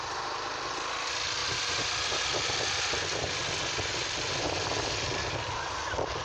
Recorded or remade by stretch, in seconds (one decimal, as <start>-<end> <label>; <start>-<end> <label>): 0.0-6.2 recorded